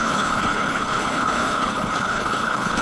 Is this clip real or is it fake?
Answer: fake